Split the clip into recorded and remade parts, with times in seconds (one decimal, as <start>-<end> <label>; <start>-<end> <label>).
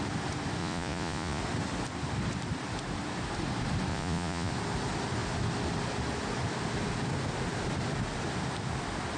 0.0-0.6 recorded; 0.6-1.4 remade; 1.4-3.9 recorded; 3.9-4.5 remade; 4.5-9.2 recorded